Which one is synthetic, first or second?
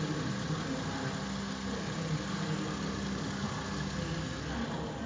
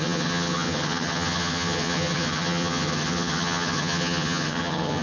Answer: second